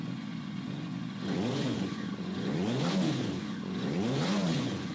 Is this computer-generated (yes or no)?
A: yes